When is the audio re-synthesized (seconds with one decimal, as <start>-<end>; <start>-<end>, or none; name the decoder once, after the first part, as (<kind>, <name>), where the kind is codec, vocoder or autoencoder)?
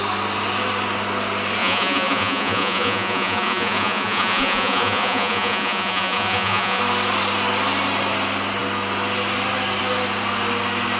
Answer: 1.6-6.8 (vocoder, Vocos)